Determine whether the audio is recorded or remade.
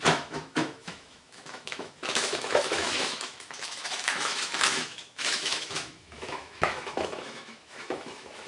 remade